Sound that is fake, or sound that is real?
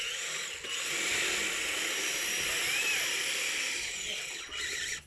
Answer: real